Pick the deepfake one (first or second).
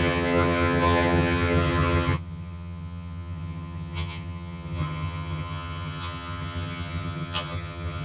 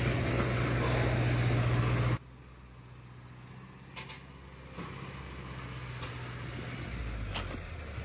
first